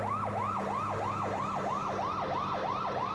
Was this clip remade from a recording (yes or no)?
no